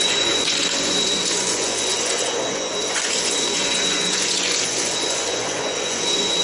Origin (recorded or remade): remade